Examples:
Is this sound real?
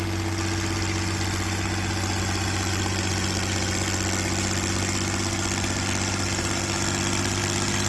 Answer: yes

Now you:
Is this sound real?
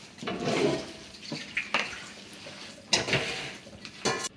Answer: yes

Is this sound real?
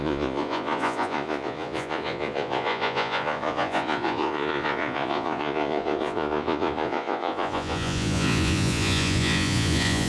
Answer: no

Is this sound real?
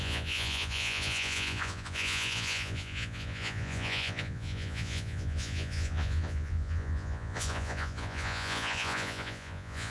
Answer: no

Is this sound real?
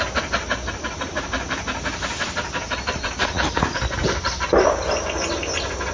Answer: yes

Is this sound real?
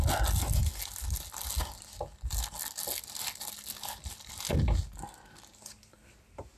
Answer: yes